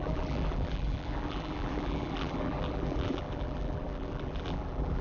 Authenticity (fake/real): fake